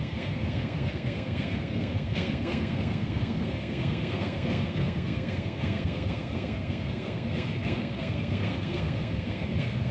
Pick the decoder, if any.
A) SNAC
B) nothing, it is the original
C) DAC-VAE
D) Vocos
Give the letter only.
A